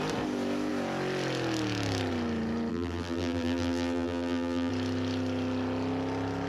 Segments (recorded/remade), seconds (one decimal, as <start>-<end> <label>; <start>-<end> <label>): 0.0-2.7 recorded; 2.7-4.7 remade; 4.7-6.5 recorded